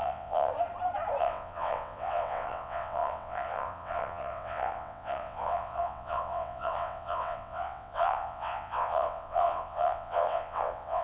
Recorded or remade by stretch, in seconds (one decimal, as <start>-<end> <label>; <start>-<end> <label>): 0.0-0.5 remade; 0.5-1.2 recorded; 1.2-11.0 remade